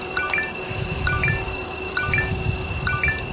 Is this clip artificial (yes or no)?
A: yes